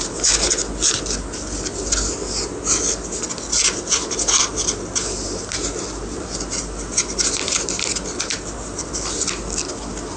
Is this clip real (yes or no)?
yes